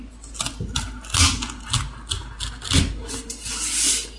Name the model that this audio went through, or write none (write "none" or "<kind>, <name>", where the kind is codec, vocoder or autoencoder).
none